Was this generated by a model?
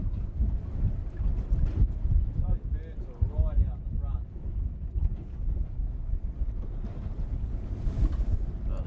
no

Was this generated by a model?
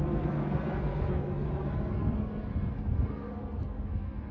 yes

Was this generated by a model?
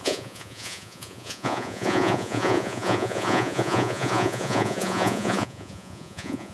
yes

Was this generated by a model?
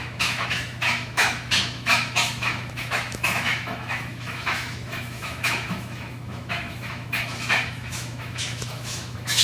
yes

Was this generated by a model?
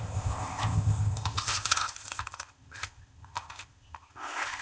yes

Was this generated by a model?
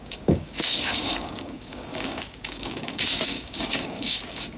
yes